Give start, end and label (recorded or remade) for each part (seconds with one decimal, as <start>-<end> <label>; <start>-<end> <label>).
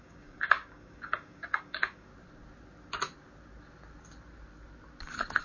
0.0-2.1 remade; 2.1-5.4 recorded